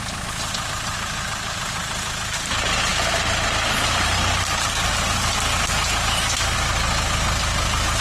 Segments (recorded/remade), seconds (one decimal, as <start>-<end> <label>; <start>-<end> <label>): 0.0-8.0 recorded

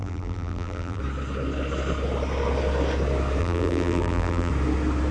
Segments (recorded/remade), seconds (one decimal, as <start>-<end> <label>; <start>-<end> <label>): 0.0-1.0 remade; 1.0-3.4 recorded; 3.4-4.5 remade; 4.5-5.1 recorded